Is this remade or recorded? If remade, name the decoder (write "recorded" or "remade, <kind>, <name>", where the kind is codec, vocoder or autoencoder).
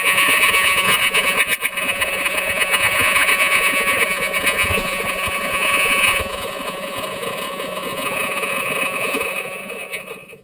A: remade, vocoder, Vocos